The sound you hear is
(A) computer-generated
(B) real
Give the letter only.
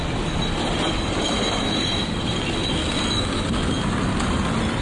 B